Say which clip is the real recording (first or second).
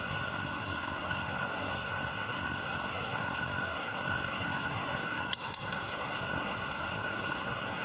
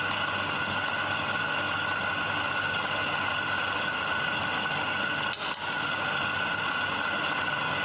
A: second